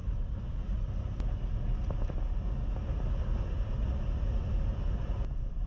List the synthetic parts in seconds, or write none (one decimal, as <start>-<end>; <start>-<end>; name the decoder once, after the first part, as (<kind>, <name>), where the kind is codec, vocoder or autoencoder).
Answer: none